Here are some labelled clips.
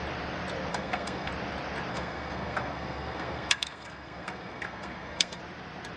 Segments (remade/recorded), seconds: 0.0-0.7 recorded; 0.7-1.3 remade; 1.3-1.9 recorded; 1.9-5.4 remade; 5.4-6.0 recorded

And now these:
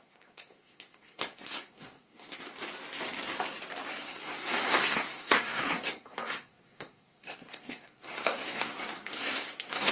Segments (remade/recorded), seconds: 0.0-2.5 remade; 2.5-3.9 recorded; 3.9-9.9 remade

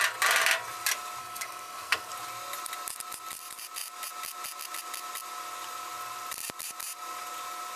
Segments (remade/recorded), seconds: 0.0-1.2 recorded; 1.2-2.1 remade; 2.1-7.8 recorded

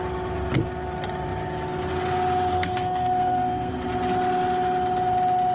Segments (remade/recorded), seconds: 0.0-2.5 recorded; 2.5-3.7 remade; 3.7-5.5 recorded